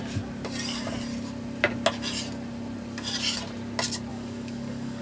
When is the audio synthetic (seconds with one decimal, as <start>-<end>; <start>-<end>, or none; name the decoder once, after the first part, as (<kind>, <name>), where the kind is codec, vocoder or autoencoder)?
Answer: 4.1-5.0 (codec, DAC)